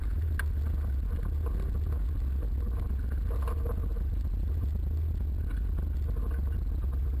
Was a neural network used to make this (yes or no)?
no